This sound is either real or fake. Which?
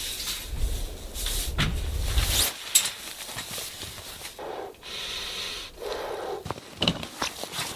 real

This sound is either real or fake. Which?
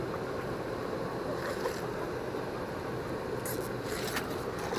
real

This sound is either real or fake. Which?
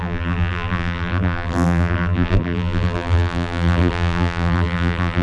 fake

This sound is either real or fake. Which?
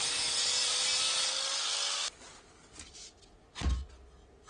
real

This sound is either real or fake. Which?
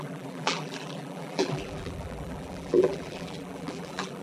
fake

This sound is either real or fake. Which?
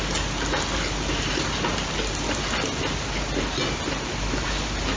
real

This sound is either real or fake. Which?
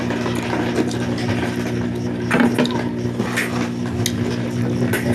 real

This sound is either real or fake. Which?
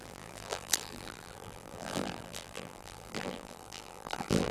fake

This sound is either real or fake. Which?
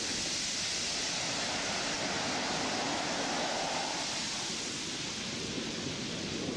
real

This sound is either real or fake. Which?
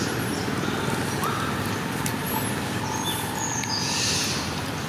real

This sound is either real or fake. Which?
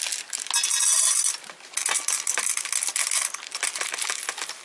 real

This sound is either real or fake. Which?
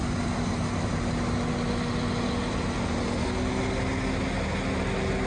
real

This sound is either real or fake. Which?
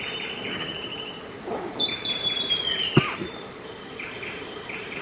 fake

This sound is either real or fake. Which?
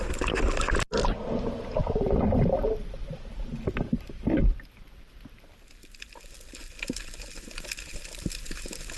fake